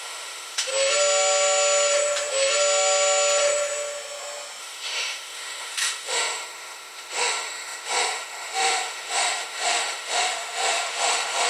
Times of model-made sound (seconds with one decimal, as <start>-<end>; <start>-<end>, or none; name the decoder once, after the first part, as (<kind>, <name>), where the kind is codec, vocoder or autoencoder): 0.0-0.7 (autoencoder, DAC-VAE); 4.6-11.5